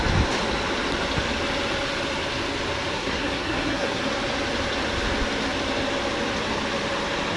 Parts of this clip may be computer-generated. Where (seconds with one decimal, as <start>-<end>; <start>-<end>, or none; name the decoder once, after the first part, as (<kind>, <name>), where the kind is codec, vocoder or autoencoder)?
2.9-4.0 (codec, SNAC)